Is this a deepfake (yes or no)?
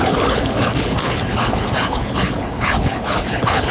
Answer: yes